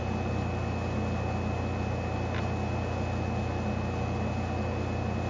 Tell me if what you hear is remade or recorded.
recorded